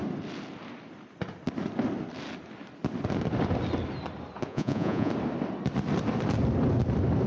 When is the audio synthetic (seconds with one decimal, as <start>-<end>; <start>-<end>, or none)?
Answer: 4.5-5.1